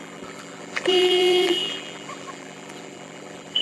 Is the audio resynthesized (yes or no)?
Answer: yes